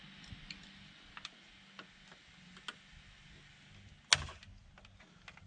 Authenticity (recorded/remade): recorded